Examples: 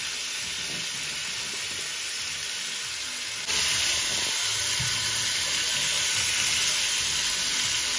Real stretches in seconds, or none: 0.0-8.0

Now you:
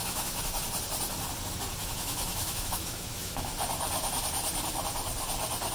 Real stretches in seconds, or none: 0.6-1.8; 3.5-5.7

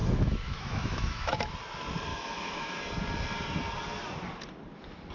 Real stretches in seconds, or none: 1.5-2.1; 2.8-5.1

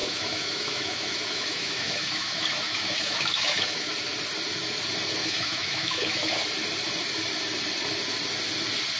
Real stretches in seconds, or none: 3.9-5.2; 6.3-9.0

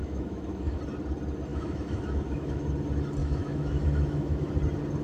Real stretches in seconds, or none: 0.8-1.5; 2.7-3.2; 4.5-5.0

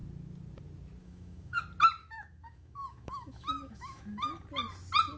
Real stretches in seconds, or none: 0.0-1.0; 1.6-2.0; 4.3-5.2

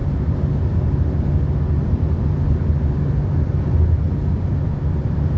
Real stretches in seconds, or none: 0.0-5.4